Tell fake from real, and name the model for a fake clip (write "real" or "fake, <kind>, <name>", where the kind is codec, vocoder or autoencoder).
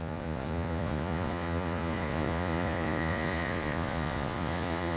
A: fake, vocoder, Vocos